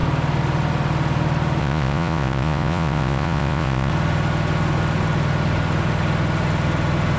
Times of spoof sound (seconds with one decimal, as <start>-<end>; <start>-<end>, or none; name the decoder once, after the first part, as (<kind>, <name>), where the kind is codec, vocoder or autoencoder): 1.6-3.9 (vocoder, Vocos)